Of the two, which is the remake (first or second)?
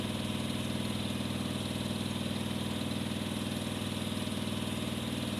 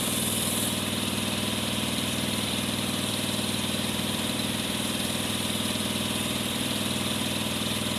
second